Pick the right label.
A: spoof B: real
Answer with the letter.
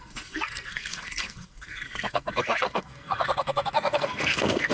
A